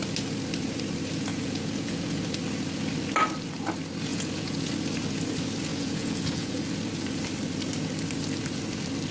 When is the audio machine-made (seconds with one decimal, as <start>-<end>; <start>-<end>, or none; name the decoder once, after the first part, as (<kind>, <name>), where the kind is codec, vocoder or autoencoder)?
1.3-2.2 (vocoder, Vocos); 4.1-4.7; 5.7-6.6